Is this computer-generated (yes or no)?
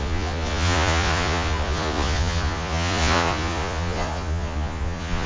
yes